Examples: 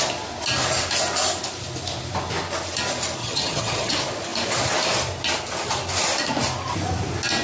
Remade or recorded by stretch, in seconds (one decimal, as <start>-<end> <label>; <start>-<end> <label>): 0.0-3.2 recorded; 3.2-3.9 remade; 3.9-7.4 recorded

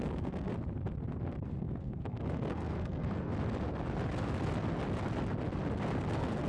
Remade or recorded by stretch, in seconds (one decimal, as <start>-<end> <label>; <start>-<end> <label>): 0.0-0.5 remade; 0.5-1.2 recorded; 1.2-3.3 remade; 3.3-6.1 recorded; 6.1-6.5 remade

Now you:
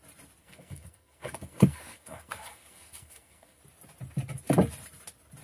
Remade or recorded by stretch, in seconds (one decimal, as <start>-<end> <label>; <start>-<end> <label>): 0.0-0.4 recorded; 0.4-3.6 remade; 3.6-5.4 recorded

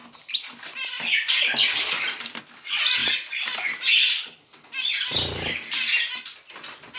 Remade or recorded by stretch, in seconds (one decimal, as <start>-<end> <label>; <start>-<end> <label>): 0.0-2.4 remade; 2.4-3.0 recorded; 3.0-5.9 remade; 5.9-7.0 recorded